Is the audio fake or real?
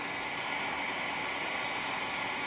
real